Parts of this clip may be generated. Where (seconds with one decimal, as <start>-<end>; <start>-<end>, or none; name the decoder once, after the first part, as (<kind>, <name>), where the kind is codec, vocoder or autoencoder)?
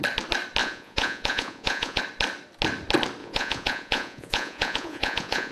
0.6-2.0 (vocoder, Vocos); 3.2-5.5